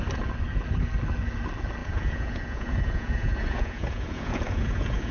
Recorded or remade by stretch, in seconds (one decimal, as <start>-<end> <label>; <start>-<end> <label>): 0.0-1.8 recorded; 1.8-5.1 remade